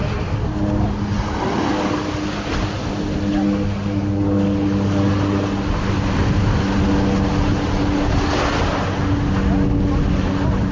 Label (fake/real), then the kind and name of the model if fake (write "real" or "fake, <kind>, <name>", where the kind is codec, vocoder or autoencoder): real